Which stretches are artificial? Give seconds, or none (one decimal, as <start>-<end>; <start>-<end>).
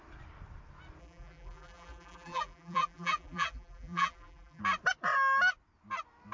1.0-4.6